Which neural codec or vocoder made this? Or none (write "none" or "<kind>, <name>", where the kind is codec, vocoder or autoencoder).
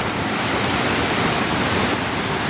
none